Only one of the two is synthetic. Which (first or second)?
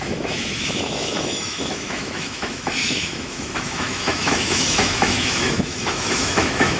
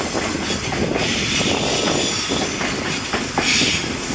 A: first